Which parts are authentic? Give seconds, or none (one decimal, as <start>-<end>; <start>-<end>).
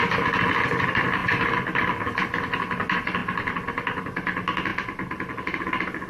0.0-6.1